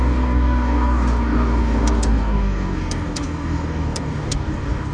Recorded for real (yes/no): no